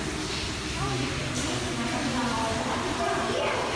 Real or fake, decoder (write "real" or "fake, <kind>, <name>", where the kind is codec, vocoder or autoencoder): real